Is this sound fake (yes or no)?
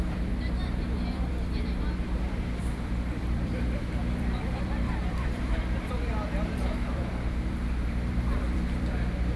yes